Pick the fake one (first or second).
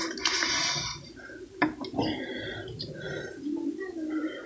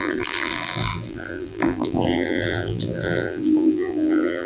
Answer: second